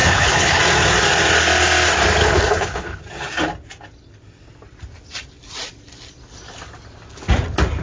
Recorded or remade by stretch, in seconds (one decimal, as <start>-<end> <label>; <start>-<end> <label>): 0.0-0.6 remade; 0.6-2.2 recorded; 2.2-3.0 remade; 3.0-7.8 recorded